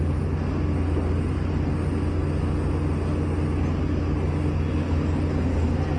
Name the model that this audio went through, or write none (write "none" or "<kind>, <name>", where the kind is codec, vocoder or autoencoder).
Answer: none